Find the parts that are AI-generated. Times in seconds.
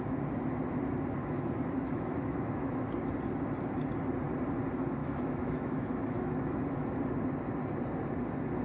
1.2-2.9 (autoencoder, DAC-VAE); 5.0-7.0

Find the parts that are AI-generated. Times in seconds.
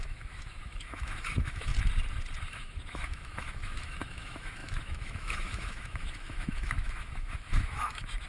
0.0-1.7 (autoencoder, DAC-VAE); 2.4-8.3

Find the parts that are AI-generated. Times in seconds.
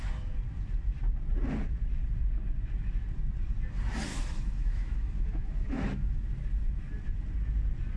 4.1-6.1 (autoencoder, DAC-VAE)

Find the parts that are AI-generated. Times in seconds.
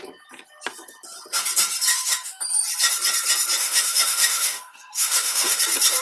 1.9-2.4 (autoencoder, DAC-VAE); 3.6-5.6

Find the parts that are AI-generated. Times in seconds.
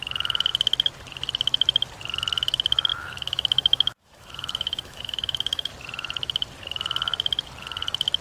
2.9-5.7 (autoencoder, DAC-VAE)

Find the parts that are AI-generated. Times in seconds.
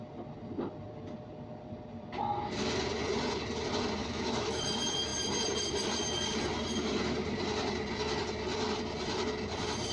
4.0-4.6 (autoencoder, DAC-VAE)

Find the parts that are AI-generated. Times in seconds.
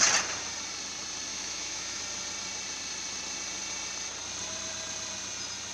1.3-2.0 (autoencoder, DAC-VAE)